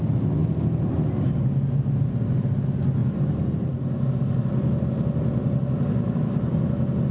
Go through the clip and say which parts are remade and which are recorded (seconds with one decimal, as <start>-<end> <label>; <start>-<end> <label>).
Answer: 0.0-7.1 recorded